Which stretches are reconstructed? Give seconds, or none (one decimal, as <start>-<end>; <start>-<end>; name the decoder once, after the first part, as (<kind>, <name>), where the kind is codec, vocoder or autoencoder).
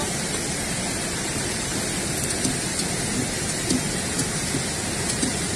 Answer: 0.0-1.7 (vocoder, BigVGAN v2); 5.1-5.6